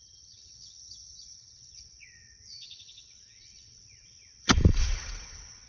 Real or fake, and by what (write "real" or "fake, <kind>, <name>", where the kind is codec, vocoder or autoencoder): fake, vocoder, WaveNeXt